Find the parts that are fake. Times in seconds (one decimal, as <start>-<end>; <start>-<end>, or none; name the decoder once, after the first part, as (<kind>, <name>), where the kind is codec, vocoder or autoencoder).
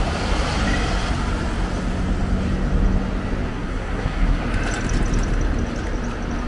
3.5-4.4 (codec, SNAC)